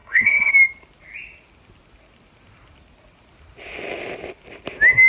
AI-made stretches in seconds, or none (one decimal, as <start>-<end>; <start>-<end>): 0.0-0.5